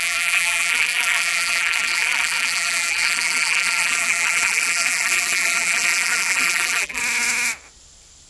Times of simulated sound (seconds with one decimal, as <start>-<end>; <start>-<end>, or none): 0.0-7.0